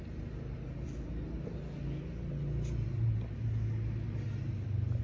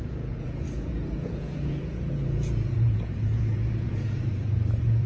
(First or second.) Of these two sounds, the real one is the first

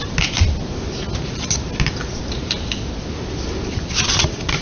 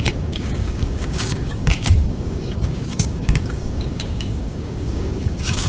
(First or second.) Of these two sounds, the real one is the first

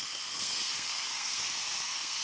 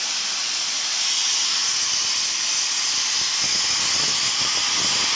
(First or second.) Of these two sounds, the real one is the second